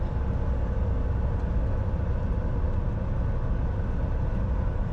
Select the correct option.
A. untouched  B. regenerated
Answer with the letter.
A